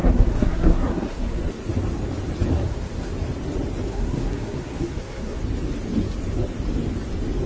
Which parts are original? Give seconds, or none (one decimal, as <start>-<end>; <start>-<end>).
1.4-2.5; 3.1-3.9; 5.4-7.5